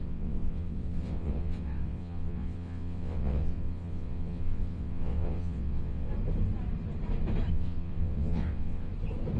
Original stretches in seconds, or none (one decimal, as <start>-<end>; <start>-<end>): 6.1-7.5; 8.9-9.4